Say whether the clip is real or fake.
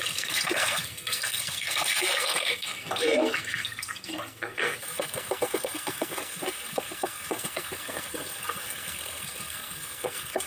fake